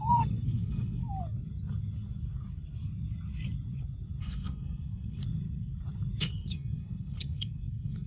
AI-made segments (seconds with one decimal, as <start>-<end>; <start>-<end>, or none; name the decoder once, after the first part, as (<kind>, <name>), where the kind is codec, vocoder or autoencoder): 0.0-1.0 (codec, SNAC); 4.2-5.2; 6.2-8.1